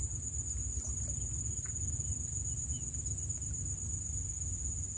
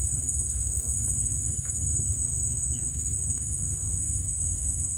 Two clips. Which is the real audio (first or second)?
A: first